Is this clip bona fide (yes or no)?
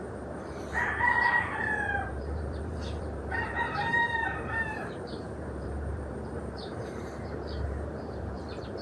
no